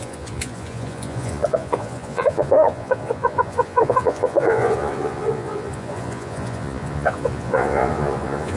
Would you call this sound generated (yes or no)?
yes